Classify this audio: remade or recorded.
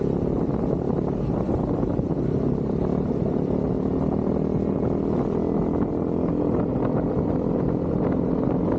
recorded